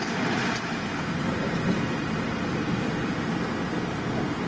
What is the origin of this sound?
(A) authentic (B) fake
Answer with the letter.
A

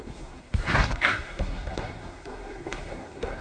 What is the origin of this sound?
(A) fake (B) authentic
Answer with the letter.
A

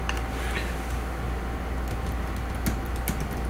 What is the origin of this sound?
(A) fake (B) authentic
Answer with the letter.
B